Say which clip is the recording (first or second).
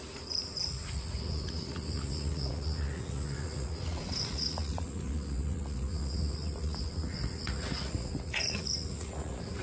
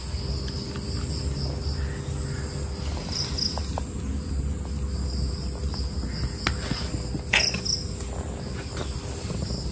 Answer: second